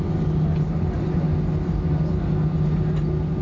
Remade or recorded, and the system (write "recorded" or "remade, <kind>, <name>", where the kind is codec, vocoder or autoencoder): recorded